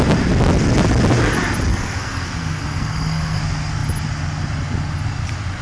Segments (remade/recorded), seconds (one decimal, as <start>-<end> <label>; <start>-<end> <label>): 0.0-1.7 recorded; 1.7-3.4 remade; 3.4-5.6 recorded

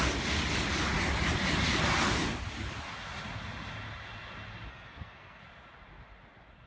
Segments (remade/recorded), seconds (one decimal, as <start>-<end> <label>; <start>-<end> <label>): 0.0-4.7 recorded; 4.7-5.4 remade; 5.4-6.7 recorded